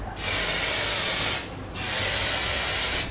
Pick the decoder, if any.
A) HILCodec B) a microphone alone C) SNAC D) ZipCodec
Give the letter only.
B